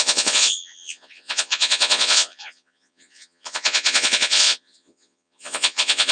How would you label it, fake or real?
fake